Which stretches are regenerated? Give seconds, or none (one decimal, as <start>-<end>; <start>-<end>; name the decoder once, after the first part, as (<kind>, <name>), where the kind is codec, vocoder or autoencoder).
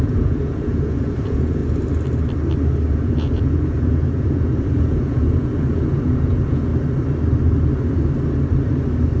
0.0-1.6 (vocoder, Vocos); 2.9-6.7